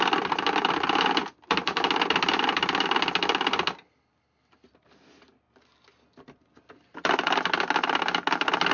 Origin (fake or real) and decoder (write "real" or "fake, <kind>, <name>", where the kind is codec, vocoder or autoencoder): real